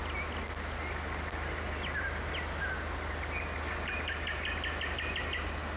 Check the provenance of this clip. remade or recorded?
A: recorded